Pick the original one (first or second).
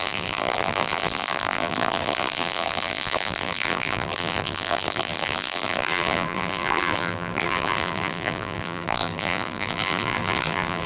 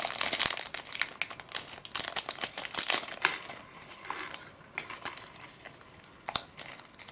second